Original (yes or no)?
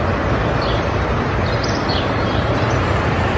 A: no